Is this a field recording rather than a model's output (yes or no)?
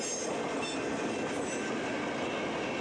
yes